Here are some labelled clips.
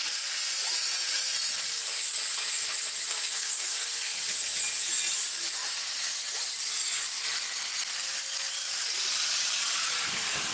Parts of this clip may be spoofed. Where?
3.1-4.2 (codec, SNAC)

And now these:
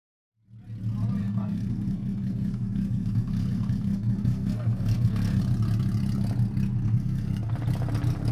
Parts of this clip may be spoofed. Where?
1.2-5.4 (codec, SNAC); 6.8-7.5

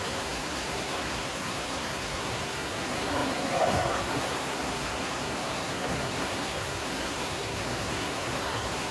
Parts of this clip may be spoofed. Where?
0.0-8.9 (codec, SNAC)

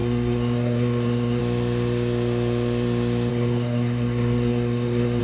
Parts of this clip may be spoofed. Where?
0.0-1.4 (codec, SNAC); 3.3-5.2

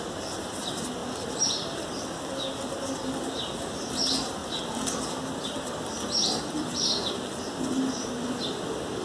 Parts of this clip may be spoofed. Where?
none

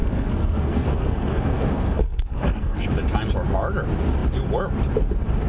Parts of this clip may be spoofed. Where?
0.0-2.9 (codec, SNAC)

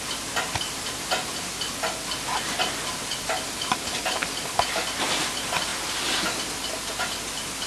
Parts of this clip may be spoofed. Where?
none

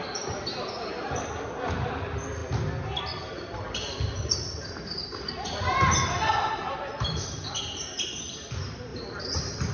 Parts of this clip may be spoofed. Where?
none